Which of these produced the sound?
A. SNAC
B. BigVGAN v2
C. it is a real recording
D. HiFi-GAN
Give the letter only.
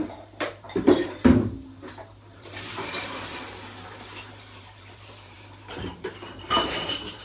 B